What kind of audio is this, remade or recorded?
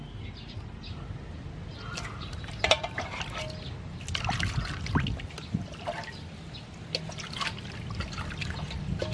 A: recorded